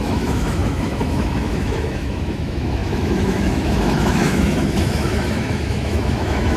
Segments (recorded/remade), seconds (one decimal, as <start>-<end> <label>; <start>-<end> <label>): 0.0-6.6 remade